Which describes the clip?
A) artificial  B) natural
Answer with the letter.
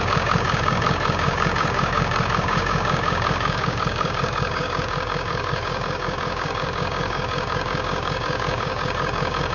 A